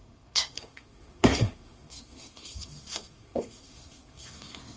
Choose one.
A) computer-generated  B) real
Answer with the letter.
A